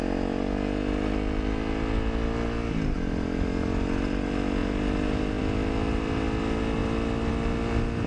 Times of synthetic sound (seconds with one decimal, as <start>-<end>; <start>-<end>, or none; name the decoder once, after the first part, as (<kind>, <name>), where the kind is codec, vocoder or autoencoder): none